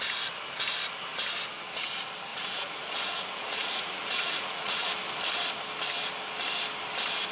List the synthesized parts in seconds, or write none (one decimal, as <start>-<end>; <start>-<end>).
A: 2.3-4.9